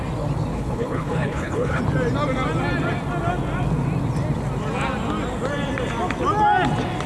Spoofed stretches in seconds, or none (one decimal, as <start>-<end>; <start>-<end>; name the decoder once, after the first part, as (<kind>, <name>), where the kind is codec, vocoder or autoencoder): 0.5-1.8 (codec, HILCodec)